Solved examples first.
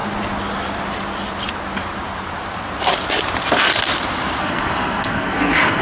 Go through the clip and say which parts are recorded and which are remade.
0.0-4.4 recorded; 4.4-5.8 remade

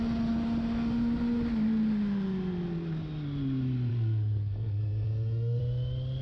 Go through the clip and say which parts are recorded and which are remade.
0.0-3.9 recorded; 3.9-5.6 remade; 5.6-6.2 recorded

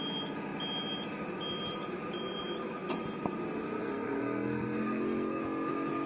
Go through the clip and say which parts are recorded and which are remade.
0.0-3.8 recorded; 3.8-5.4 remade; 5.4-6.1 recorded

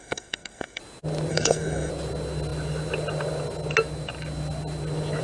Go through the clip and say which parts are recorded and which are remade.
0.0-0.8 remade; 0.8-1.3 recorded; 1.3-1.9 remade; 1.9-5.2 recorded

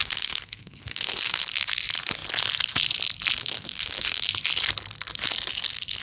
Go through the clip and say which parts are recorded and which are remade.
0.0-1.4 remade; 1.4-3.4 recorded; 3.4-4.3 remade; 4.3-6.0 recorded

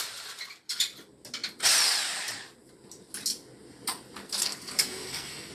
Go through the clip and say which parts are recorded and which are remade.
0.0-4.2 recorded; 4.2-5.5 remade

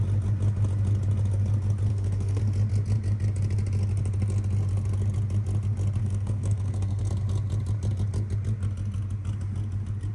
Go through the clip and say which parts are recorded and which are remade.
0.0-1.9 recorded; 1.9-2.4 remade; 2.4-6.0 recorded; 6.0-7.1 remade; 7.1-10.1 recorded

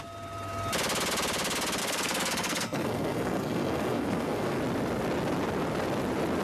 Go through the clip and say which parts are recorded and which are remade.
0.0-1.8 recorded; 1.8-4.6 remade; 4.6-6.4 recorded